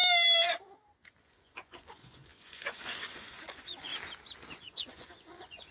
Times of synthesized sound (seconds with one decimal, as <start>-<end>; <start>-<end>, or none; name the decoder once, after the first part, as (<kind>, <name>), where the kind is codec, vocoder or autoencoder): 1.2-3.9 (vocoder, Vocos); 4.5-5.7